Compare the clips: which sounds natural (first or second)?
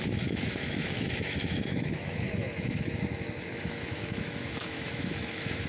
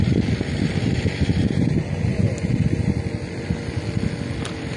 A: second